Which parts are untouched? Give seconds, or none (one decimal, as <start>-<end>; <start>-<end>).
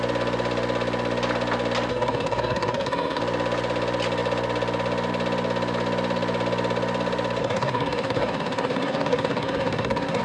0.0-1.9; 3.2-7.4